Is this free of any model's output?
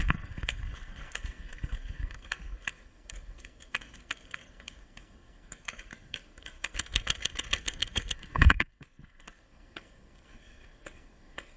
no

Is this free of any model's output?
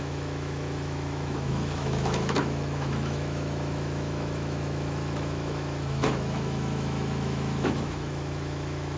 no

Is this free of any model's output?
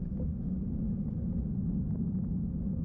yes